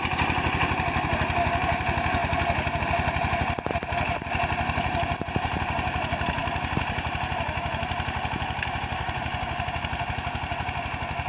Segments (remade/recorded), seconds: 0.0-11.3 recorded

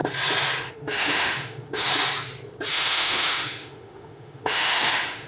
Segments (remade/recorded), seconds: 0.0-0.7 recorded; 0.7-1.9 remade; 1.9-2.7 recorded; 2.7-5.3 remade

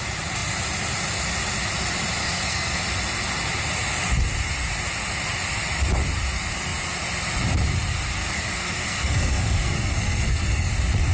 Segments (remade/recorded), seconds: 0.0-2.2 recorded; 2.2-2.8 remade; 2.8-8.2 recorded; 8.2-10.7 remade; 10.7-11.1 recorded

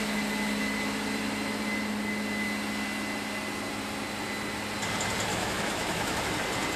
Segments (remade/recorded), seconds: 0.0-5.3 recorded; 5.3-6.2 remade; 6.2-6.8 recorded